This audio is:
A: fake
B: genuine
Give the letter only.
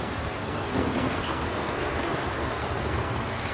A